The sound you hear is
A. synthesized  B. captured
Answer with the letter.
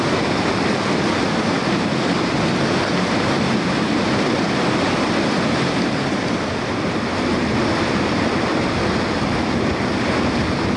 A